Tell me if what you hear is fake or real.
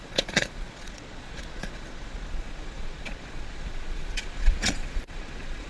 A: fake